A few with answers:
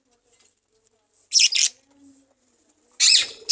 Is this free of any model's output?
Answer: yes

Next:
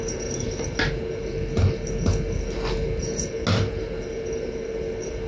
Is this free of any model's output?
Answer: yes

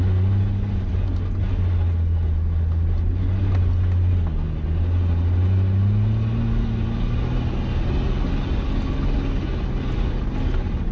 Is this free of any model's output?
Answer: yes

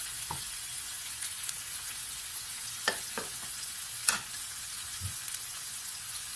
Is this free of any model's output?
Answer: no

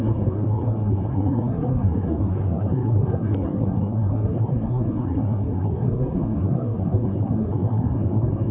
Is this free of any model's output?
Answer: no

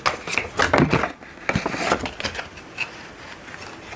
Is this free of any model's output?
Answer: yes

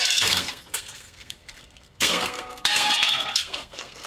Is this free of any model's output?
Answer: no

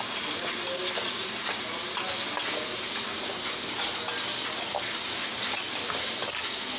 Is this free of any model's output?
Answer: yes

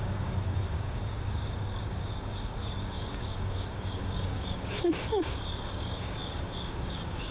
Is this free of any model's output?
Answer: no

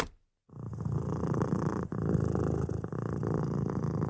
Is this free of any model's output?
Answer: yes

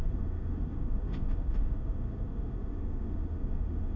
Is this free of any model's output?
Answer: no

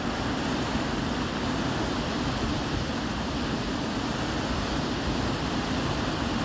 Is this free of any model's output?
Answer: yes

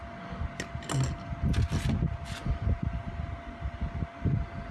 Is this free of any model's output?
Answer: yes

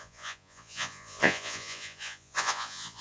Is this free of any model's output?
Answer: no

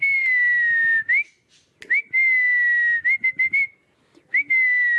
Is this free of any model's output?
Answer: yes